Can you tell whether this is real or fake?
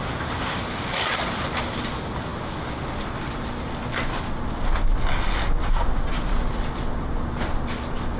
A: real